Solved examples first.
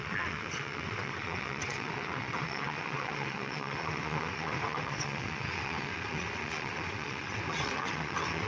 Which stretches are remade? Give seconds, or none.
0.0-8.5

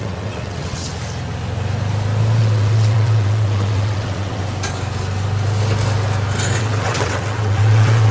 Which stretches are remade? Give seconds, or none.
0.0-0.9; 2.4-4.4; 6.6-8.1